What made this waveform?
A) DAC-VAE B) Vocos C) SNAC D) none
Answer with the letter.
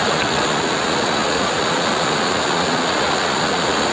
B